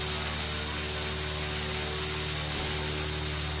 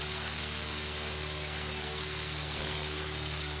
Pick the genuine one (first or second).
first